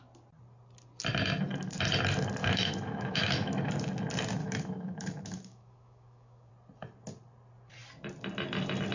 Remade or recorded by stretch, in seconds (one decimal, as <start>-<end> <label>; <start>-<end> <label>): 0.0-2.4 recorded; 2.4-3.7 remade; 3.7-4.4 recorded; 4.4-6.5 remade; 6.5-8.9 recorded